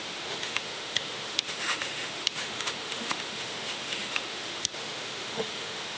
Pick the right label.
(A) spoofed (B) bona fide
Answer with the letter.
A